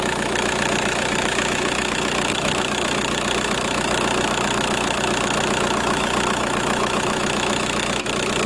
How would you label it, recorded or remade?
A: remade